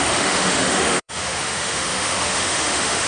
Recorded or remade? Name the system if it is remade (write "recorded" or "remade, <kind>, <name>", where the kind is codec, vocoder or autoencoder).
remade, autoencoder, DAC-VAE